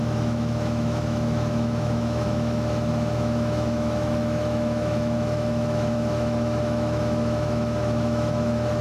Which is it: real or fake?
fake